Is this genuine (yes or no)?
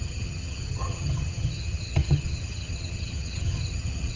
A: no